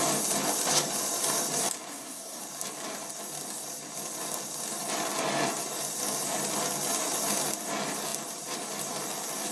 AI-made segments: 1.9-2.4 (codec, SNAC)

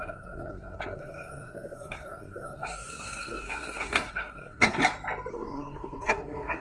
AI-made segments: 0.0-4.8 (codec, SNAC); 5.3-6.6

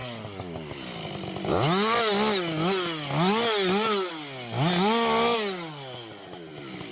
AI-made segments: none

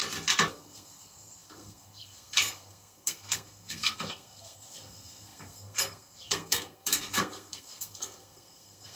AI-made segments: 0.5-9.0 (codec, SNAC)

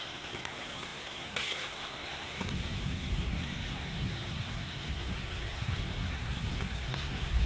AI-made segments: 0.0-7.5 (codec, SNAC)

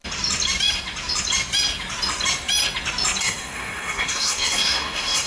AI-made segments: 3.2-5.3 (codec, SNAC)

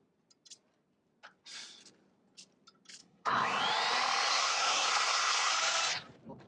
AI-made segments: 3.0-3.6 (codec, SNAC); 4.3-5.5